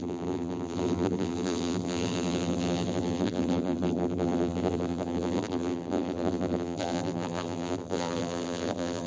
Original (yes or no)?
no